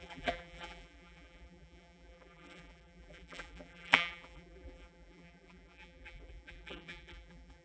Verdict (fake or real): fake